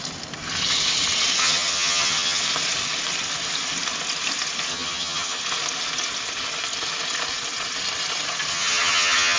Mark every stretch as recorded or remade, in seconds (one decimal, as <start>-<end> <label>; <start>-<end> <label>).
0.0-1.4 recorded; 1.4-2.4 remade; 2.4-4.7 recorded; 4.7-5.4 remade; 5.4-8.5 recorded; 8.5-9.4 remade